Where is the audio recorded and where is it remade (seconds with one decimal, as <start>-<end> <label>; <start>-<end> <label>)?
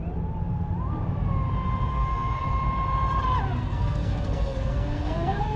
0.0-1.9 recorded; 1.9-2.4 remade; 2.4-3.6 recorded; 3.6-5.6 remade